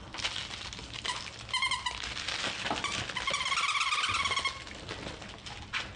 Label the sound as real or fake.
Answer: real